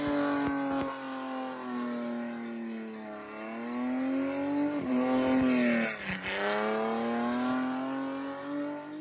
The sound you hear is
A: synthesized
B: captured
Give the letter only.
B